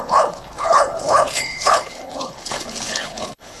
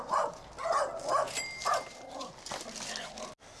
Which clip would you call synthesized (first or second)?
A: first